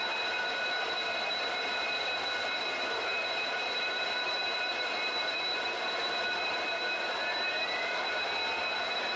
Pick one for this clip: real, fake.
fake